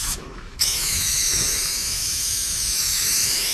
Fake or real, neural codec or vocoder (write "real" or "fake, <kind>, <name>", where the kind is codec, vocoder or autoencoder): fake, autoencoder, DAC-VAE